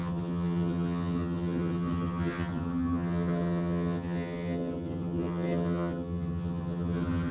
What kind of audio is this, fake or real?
fake